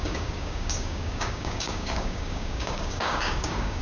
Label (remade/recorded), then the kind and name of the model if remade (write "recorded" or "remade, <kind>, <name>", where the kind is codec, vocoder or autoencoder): remade, codec, DAC